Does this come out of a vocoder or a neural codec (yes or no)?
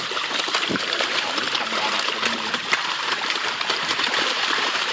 yes